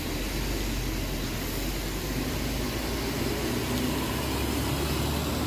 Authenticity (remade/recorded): recorded